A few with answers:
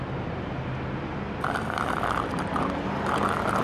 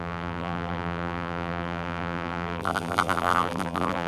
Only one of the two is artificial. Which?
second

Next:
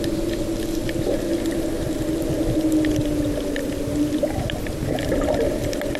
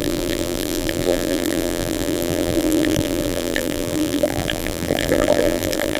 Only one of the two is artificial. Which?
second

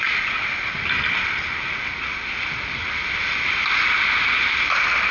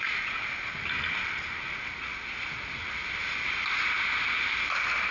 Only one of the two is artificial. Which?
first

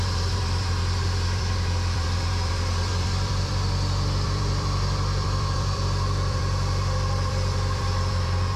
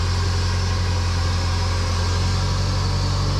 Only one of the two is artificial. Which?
first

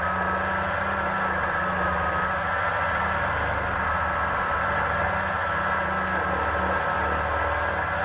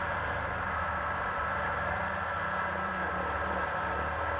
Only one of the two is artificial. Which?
second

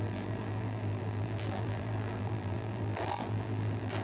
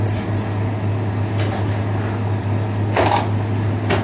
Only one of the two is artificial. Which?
first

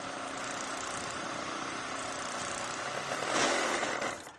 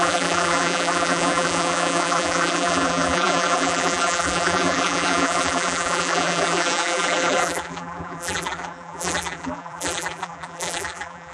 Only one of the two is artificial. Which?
second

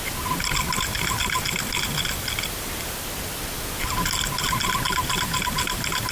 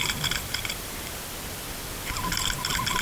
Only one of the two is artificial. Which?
second